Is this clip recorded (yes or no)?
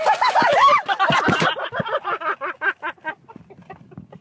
yes